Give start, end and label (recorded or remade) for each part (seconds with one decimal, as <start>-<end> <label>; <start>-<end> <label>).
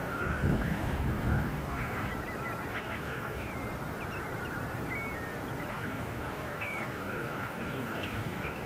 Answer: 0.0-2.1 remade; 2.1-2.7 recorded; 2.7-3.5 remade; 3.5-5.7 recorded; 5.7-8.7 remade